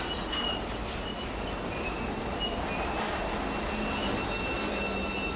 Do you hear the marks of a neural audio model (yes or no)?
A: no